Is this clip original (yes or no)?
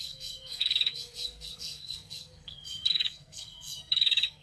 no